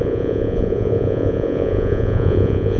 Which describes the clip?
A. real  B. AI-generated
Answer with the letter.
B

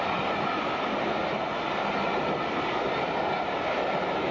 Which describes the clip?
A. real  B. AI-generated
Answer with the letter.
A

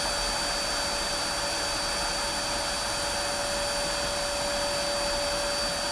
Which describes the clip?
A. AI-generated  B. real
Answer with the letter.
B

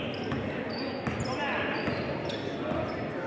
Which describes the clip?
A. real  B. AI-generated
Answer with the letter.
A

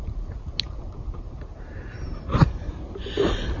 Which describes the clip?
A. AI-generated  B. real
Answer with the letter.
B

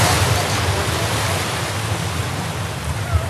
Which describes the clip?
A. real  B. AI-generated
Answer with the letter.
A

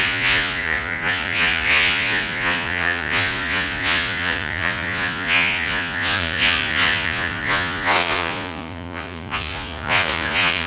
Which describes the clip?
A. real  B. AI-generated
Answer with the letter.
B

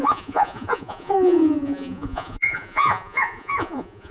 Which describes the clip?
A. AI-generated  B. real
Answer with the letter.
A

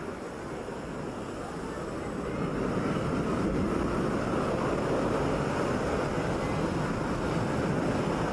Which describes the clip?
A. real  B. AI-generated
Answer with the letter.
A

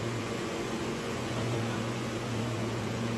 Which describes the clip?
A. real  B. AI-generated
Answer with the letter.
B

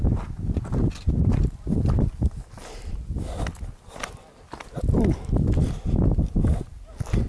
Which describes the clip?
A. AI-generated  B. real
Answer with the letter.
B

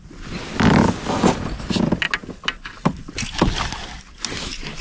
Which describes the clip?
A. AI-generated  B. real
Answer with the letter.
B